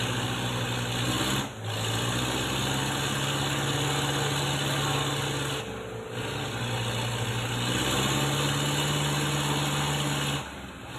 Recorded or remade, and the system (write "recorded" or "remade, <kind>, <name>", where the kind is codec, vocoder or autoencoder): recorded